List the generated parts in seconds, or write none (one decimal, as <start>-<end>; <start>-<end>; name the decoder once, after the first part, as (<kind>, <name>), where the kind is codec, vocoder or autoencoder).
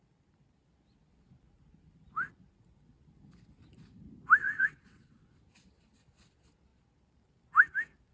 4.4-5.4 (vocoder, WaveNeXt)